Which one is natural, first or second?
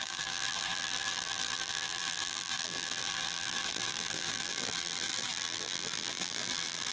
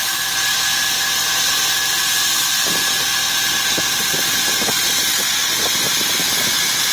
second